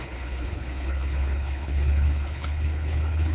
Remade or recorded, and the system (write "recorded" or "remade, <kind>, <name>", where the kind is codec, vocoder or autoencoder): remade, codec, HILCodec